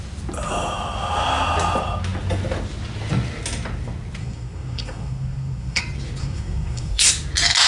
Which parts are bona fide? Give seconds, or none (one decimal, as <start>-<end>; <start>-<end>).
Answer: 0.0-4.2; 5.8-6.2; 7.1-7.7

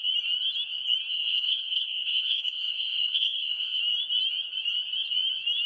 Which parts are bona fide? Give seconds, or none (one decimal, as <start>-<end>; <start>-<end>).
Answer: 0.0-1.1; 3.8-5.7

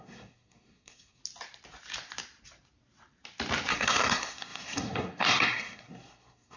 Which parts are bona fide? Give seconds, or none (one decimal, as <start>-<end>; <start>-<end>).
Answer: 1.2-3.7

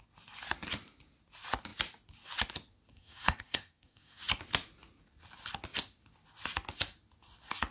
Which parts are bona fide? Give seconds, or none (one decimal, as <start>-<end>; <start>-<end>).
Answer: 0.0-2.9; 4.2-7.7

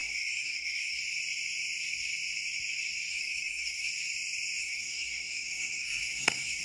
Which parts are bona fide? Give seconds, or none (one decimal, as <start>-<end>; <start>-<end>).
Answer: 1.0-3.1; 3.9-4.6

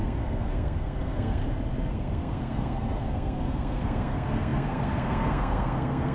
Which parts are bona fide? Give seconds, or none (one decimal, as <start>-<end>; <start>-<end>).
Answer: 1.4-1.9